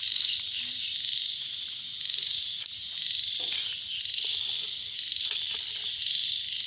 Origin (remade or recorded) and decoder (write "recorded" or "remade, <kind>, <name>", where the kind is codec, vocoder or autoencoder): recorded